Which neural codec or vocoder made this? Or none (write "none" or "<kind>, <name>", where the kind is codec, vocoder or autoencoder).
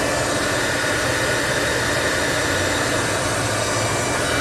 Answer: none